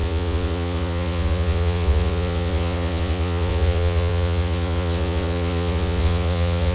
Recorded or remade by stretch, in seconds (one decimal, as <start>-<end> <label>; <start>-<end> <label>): 0.0-6.7 remade